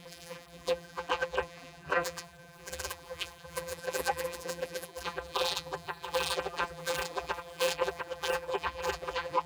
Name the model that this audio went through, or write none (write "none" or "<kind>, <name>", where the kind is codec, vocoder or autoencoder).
vocoder, BigVGAN v2